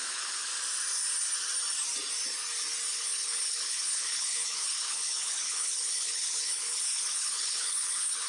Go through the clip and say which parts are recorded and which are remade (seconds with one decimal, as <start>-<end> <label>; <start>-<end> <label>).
0.0-0.5 remade; 0.5-2.9 recorded; 2.9-8.3 remade